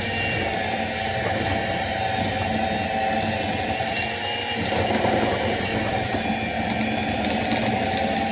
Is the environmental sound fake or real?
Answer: real